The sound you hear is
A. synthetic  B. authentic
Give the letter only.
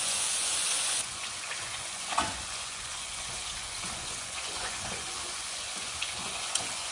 A